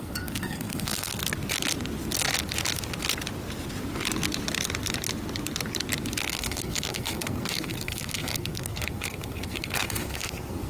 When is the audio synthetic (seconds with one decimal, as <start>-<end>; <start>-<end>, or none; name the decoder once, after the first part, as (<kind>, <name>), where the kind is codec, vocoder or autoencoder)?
0.0-1.2 (codec, SNAC); 6.2-10.7